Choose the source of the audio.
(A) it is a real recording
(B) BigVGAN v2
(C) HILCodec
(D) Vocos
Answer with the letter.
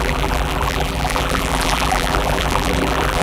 B